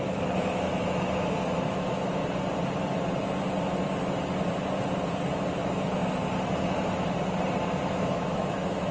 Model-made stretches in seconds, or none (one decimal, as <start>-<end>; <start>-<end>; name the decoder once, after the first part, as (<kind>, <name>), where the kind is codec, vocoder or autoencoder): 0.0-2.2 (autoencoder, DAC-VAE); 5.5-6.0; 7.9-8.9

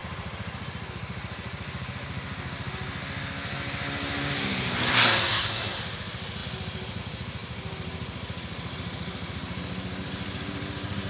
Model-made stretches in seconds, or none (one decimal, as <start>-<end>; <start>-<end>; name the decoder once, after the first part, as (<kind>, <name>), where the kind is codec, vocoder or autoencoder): 4.9-5.8 (codec, SNAC)

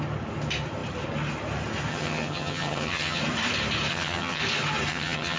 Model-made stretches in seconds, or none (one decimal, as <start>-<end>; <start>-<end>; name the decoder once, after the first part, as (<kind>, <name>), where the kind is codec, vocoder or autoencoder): 1.9-3.2 (vocoder, HiFi-GAN); 3.9-4.4; 4.9-5.4